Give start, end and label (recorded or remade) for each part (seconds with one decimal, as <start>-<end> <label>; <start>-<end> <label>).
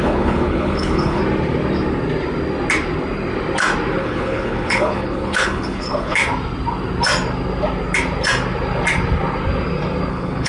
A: 0.0-1.2 remade; 1.2-4.0 recorded; 4.0-6.2 remade; 6.2-10.1 recorded; 10.1-10.5 remade